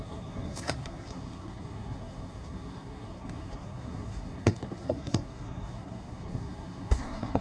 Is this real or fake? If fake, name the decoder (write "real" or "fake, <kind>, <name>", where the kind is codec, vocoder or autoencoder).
fake, codec, SNAC